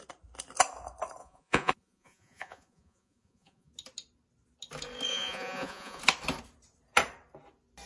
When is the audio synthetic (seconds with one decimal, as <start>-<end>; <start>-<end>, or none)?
1.2-3.7; 5.1-6.0